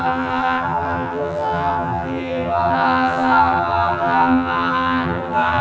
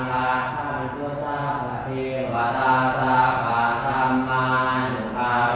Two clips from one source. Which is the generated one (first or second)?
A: first